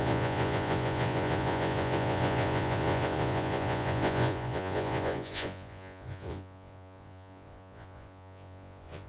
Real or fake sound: fake